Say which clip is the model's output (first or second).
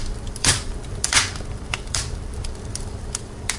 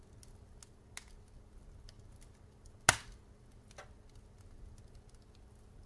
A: first